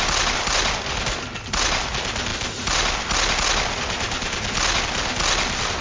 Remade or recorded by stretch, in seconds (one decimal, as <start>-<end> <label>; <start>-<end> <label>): 0.0-1.3 recorded; 1.3-1.9 remade; 1.9-5.8 recorded